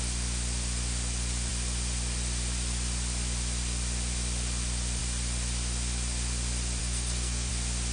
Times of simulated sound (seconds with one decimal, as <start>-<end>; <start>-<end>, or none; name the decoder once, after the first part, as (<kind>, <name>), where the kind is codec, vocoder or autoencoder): 6.8-7.5 (codec, SNAC)